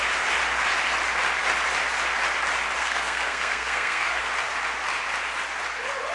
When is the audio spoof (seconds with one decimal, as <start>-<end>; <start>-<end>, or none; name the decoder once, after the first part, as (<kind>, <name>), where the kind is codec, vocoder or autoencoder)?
2.8-4.2 (codec, SNAC)